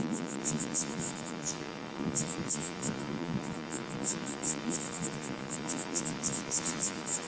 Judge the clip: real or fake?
fake